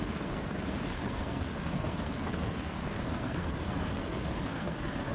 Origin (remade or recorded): remade